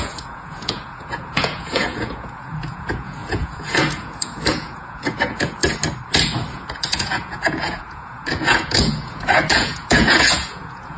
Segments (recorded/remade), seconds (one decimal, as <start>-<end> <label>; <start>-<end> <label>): 0.0-5.6 remade; 5.6-6.5 recorded; 6.5-11.0 remade